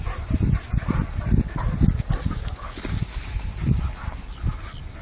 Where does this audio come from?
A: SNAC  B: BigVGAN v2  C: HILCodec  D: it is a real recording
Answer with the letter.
D